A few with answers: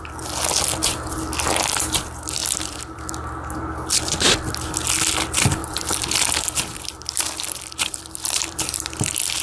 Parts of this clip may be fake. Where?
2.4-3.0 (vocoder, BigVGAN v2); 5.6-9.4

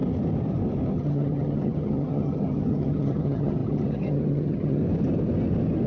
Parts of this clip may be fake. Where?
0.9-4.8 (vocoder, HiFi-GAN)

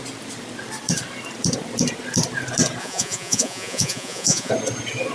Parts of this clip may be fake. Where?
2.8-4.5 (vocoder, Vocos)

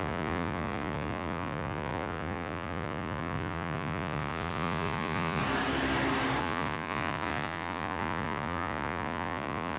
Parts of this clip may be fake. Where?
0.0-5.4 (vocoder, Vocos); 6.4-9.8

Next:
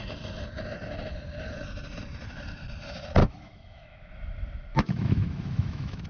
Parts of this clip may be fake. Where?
3.2-4.1 (autoencoder, DAC-VAE); 4.7-6.1